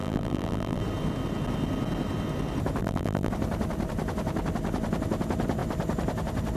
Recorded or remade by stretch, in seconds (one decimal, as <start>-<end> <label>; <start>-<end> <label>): 0.0-0.8 remade; 0.8-2.8 recorded; 2.8-3.3 remade; 3.3-6.6 recorded